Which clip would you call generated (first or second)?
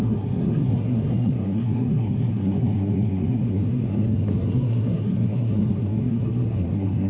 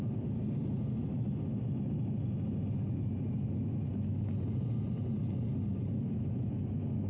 first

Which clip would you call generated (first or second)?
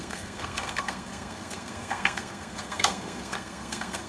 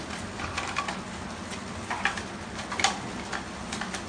first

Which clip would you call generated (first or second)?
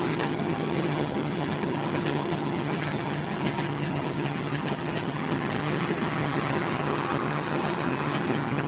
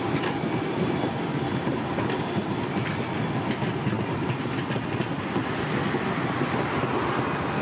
first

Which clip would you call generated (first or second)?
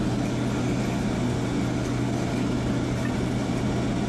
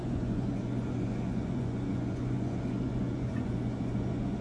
second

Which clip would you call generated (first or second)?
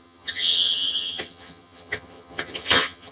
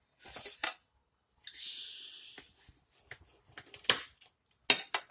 first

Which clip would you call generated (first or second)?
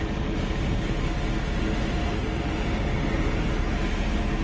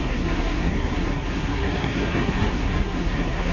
second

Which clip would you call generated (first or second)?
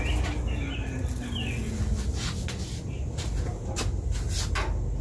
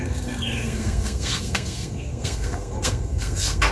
second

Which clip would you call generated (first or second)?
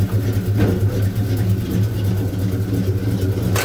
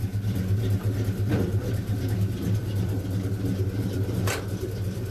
second